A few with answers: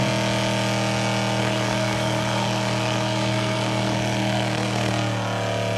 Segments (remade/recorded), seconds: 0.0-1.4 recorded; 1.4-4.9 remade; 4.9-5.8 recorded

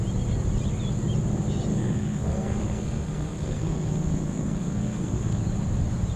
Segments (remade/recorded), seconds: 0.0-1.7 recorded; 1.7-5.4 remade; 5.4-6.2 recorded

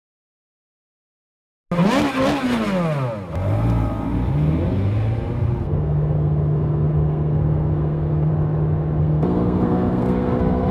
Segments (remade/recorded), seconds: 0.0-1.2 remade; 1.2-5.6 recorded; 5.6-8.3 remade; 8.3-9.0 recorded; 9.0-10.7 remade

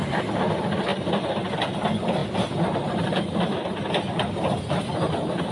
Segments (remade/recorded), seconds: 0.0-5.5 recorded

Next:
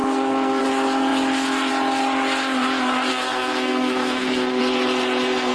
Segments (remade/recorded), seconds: 0.0-0.6 remade; 0.6-3.1 recorded; 3.1-4.6 remade; 4.6-5.5 recorded

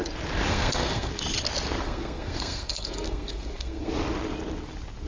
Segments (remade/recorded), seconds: 0.0-0.5 recorded; 0.5-1.1 remade; 1.1-1.8 recorded; 1.8-3.9 remade; 3.9-5.1 recorded